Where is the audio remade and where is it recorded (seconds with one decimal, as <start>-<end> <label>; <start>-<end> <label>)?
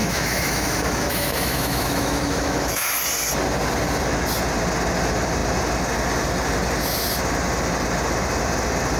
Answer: 0.0-2.9 remade; 2.9-9.0 recorded